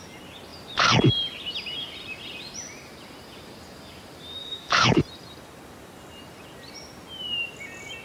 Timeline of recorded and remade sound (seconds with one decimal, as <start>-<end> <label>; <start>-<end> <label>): 0.0-4.4 recorded; 4.4-5.0 remade; 5.0-8.0 recorded